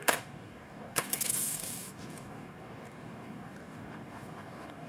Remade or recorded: remade